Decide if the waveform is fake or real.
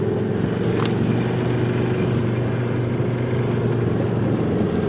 real